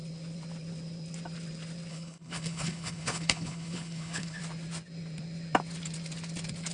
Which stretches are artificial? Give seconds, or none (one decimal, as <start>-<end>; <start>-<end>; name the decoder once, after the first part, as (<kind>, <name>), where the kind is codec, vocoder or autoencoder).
1.9-4.4 (codec, HILCodec)